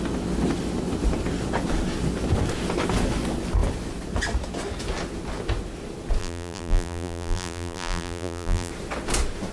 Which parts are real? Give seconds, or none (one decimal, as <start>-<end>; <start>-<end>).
0.0-6.2; 8.7-9.5